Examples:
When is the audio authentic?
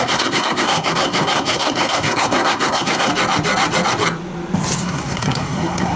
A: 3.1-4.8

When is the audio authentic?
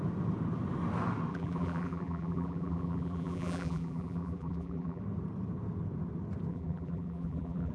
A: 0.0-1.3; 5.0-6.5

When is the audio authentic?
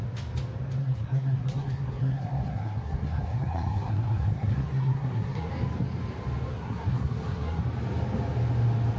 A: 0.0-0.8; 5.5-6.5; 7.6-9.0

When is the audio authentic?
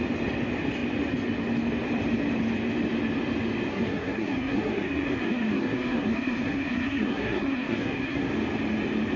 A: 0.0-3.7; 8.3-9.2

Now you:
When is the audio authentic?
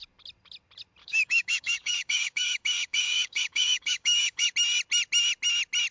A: 0.0-1.0; 4.5-5.9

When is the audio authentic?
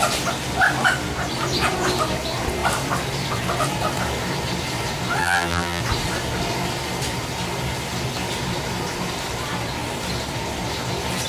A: 0.0-5.2; 5.8-11.3